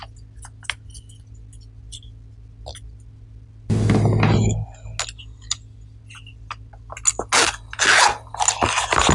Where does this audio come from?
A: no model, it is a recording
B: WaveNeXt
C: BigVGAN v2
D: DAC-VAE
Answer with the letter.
A